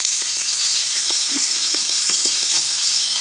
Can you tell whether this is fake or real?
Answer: fake